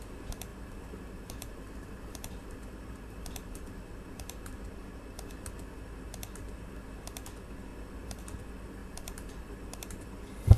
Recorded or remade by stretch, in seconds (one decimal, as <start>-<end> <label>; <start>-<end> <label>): 0.0-0.5 recorded; 0.5-5.3 remade; 5.3-7.7 recorded; 7.7-8.2 remade; 8.2-8.8 recorded; 8.8-9.6 remade; 9.6-10.6 recorded